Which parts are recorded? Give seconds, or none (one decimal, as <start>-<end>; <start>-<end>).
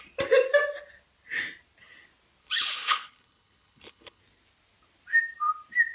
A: 0.0-2.4; 4.2-5.9